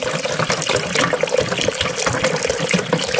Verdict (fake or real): real